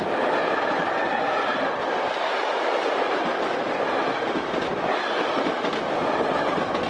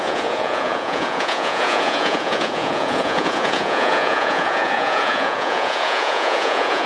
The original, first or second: first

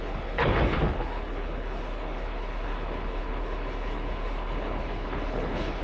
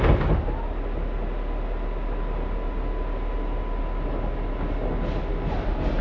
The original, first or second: second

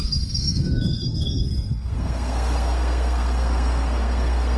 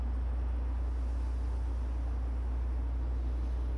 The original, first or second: second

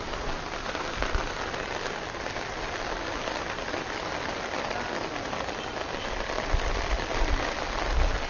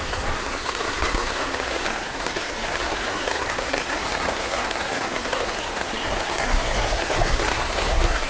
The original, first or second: first